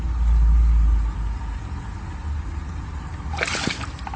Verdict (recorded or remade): recorded